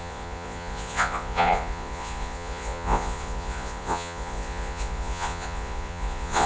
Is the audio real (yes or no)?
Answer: no